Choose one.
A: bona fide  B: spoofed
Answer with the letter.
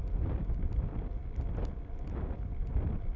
A